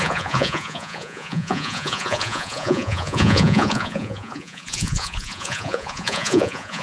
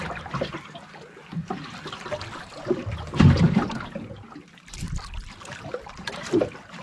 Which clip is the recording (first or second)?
second